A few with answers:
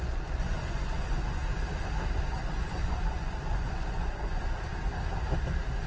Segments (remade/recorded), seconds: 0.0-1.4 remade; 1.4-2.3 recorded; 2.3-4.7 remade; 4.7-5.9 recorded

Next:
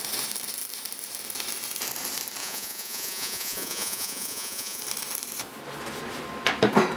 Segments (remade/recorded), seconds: 0.0-2.4 recorded; 2.4-4.8 remade; 4.8-7.0 recorded

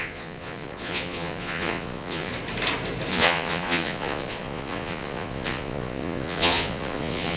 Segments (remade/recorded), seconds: 0.0-2.3 remade; 2.3-3.1 recorded; 3.1-7.4 remade

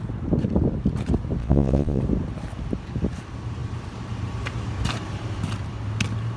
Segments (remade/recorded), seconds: 0.0-1.4 recorded; 1.4-2.0 remade; 2.0-6.4 recorded

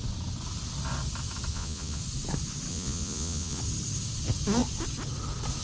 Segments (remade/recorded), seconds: 0.0-1.5 recorded; 1.5-2.0 remade; 2.0-2.7 recorded; 2.7-3.6 remade; 3.6-5.6 recorded

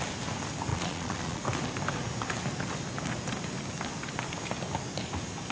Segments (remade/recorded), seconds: 0.0-0.7 recorded; 0.7-1.4 remade; 1.4-5.5 recorded